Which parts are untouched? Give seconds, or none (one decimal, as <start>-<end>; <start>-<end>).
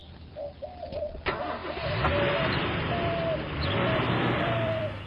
0.6-1.6